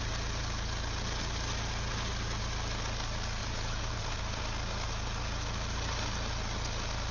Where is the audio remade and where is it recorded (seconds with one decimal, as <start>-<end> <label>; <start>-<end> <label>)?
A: 0.0-3.4 recorded; 3.4-4.4 remade; 4.4-7.1 recorded